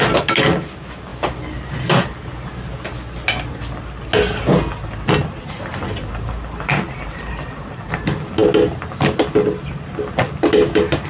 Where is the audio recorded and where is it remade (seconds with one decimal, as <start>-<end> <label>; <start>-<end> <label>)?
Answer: 0.0-11.1 recorded